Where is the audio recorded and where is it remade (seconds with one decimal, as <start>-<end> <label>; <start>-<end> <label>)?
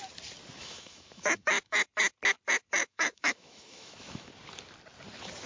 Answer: 0.0-0.6 recorded; 0.6-1.8 remade; 1.8-2.8 recorded; 2.8-4.3 remade; 4.3-5.5 recorded